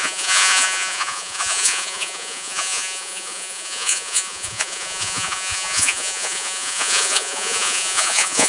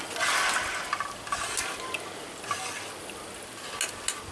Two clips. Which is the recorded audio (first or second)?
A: second